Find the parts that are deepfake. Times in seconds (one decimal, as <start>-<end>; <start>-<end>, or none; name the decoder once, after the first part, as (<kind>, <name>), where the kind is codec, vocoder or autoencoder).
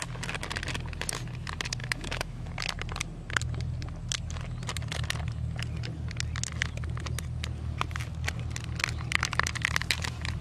1.8-2.5 (autoencoder, DAC-VAE)